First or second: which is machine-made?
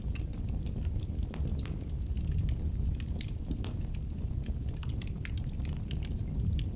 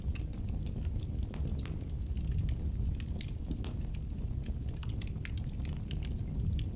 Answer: first